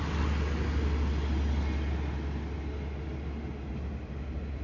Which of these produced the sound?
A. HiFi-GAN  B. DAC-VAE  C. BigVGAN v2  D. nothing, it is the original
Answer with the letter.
D